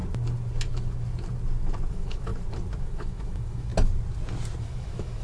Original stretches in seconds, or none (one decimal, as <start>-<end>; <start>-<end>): 0.0-1.9; 2.3-2.8; 3.7-4.6